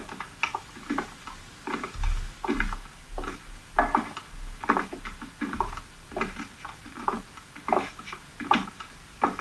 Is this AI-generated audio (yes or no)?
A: no